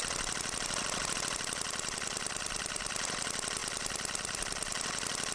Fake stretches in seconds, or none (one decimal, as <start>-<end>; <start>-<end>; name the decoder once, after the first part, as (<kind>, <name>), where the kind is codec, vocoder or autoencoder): none